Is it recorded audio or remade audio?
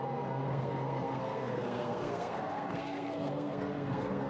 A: remade